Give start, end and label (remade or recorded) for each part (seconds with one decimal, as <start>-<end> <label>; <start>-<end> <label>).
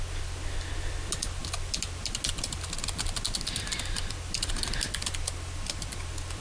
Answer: 0.0-6.4 recorded